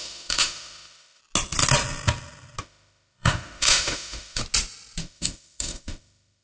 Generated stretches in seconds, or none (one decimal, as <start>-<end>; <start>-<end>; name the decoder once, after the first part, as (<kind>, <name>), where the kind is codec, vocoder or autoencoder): 0.0-1.2 (autoencoder, DAC-VAE); 2.6-4.4; 5.0-6.4